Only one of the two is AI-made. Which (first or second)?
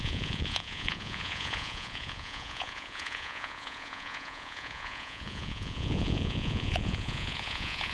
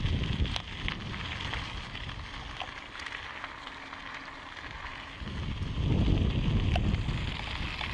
first